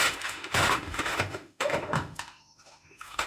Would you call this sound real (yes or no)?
no